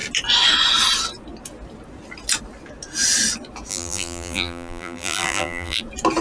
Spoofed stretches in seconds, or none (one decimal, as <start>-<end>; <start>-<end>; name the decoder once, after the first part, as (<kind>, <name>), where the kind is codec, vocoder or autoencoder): 3.7-5.8 (vocoder, BigVGAN v2)